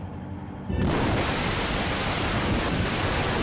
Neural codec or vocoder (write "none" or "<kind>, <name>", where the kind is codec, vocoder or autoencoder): none